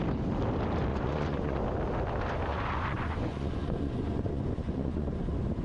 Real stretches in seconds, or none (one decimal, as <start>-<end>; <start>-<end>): 0.0-0.9; 1.6-2.5; 5.1-5.6

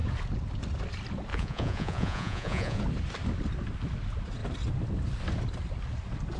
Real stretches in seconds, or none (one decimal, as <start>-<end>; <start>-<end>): 0.0-1.3; 2.8-6.4

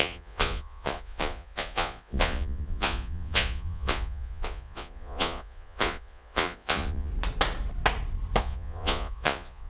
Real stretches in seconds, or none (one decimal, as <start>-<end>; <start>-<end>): 7.1-8.4

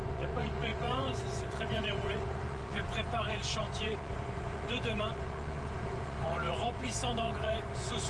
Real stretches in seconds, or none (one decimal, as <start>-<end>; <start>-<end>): none

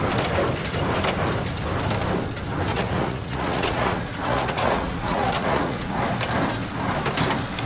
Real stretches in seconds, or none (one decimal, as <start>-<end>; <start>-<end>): 0.0-2.7; 6.0-7.7

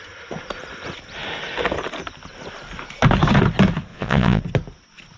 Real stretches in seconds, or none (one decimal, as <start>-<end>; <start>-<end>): 0.0-3.9; 4.4-5.2

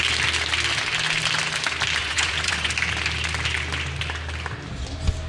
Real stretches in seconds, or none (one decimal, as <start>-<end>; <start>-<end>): 0.0-2.0; 2.7-5.3

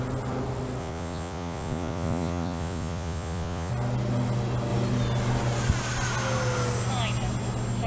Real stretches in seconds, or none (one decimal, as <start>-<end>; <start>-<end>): 0.0-0.8; 3.7-7.9